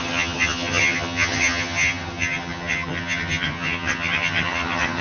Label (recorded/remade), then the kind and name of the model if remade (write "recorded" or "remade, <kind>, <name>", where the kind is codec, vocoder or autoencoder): remade, vocoder, HiFi-GAN